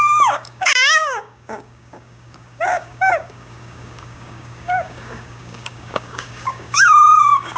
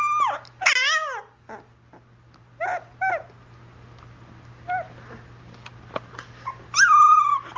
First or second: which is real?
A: second